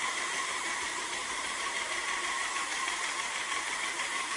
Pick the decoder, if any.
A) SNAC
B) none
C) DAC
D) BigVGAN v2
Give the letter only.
D